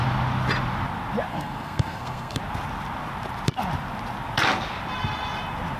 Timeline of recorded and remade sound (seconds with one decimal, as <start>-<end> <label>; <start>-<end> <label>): 0.0-1.3 recorded; 1.3-2.4 remade; 2.4-5.8 recorded